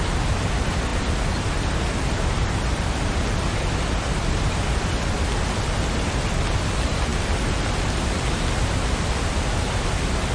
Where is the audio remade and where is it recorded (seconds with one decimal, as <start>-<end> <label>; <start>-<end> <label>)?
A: 0.0-10.3 recorded